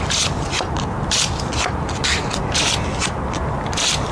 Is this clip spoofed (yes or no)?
no